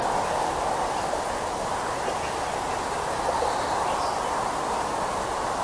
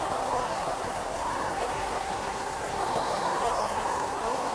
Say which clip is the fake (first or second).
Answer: second